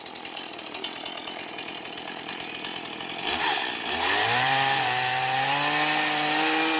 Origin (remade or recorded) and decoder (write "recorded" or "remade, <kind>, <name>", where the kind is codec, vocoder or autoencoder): remade, vocoder, BigVGAN v2